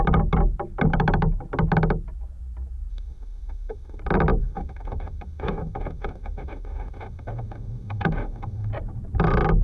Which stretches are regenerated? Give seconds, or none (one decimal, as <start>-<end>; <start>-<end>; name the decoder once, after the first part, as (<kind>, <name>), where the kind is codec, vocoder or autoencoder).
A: 2.9-4.0 (autoencoder, DAC-VAE); 4.4-8.7